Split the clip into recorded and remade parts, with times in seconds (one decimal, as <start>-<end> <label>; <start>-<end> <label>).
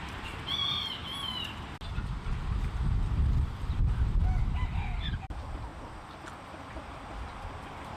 0.0-8.0 recorded